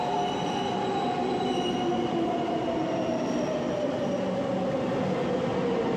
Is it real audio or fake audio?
real